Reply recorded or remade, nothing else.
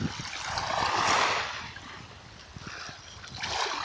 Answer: recorded